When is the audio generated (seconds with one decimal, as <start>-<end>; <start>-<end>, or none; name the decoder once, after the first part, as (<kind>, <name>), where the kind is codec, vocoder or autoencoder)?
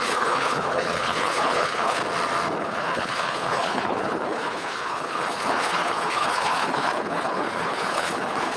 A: 0.0-2.0 (codec, HILCodec); 2.6-8.6